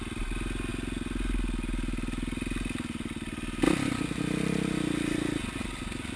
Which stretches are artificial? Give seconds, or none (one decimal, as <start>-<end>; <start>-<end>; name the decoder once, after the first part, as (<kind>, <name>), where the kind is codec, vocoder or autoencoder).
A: none